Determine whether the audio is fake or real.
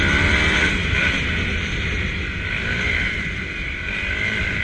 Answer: real